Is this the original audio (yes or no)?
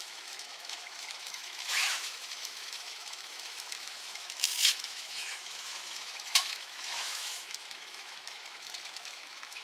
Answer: no